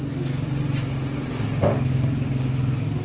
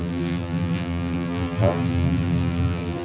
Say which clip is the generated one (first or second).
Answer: second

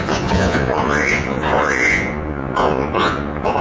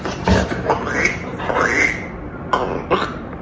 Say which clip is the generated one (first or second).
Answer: first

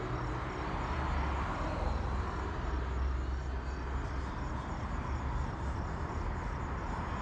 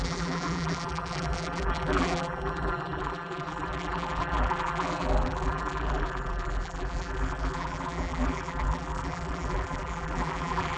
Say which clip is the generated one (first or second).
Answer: second